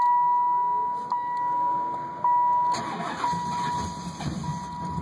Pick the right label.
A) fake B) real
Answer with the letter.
B